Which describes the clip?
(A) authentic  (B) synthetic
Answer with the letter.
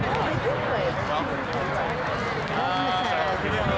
A